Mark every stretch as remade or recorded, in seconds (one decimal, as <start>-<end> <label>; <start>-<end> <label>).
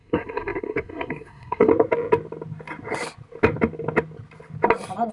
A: 0.0-1.7 remade; 1.7-5.1 recorded